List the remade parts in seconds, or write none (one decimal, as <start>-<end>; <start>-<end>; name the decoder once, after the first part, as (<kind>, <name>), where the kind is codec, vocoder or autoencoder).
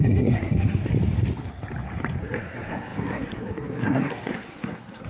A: 0.0-0.8 (codec, SNAC); 2.2-5.1